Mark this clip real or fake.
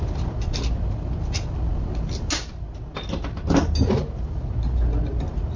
real